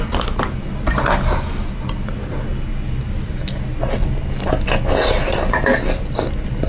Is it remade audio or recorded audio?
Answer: recorded